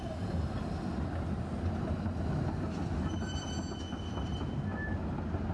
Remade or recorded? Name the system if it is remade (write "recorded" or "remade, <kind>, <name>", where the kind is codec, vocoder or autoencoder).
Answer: recorded